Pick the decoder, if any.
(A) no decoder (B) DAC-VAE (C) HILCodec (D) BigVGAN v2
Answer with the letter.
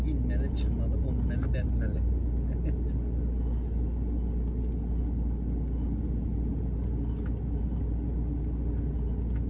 A